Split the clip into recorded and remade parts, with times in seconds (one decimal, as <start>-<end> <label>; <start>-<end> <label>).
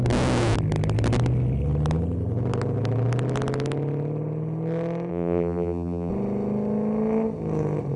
0.0-5.1 recorded; 5.1-6.1 remade; 6.1-8.0 recorded